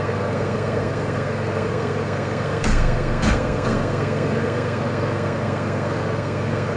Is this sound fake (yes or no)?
yes